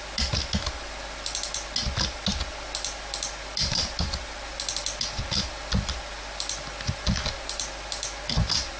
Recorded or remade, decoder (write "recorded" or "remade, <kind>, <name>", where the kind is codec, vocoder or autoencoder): recorded